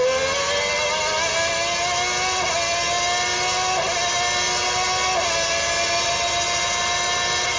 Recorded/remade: recorded